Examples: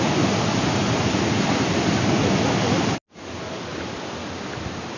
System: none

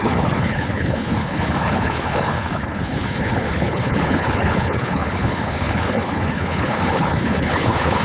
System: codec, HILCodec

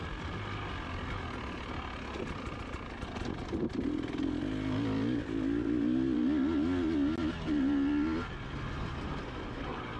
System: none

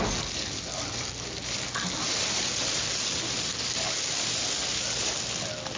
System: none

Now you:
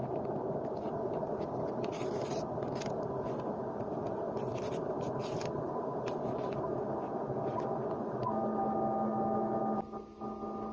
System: none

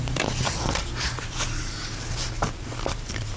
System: vocoder, BigVGAN v2